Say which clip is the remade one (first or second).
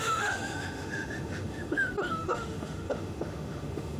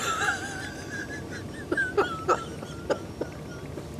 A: first